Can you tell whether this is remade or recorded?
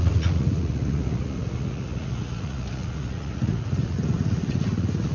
remade